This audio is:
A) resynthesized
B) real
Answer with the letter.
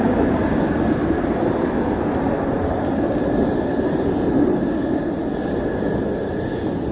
B